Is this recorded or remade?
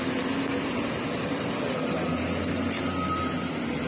recorded